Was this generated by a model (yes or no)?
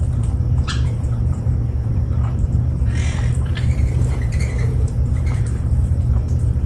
yes